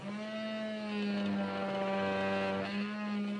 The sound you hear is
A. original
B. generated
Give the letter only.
A